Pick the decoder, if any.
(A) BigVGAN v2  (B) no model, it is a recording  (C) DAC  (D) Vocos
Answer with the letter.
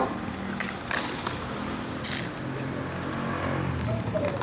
B